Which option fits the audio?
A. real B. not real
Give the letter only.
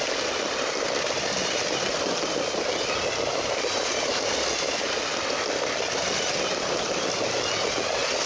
A